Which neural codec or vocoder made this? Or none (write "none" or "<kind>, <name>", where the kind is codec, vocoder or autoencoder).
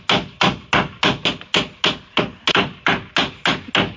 none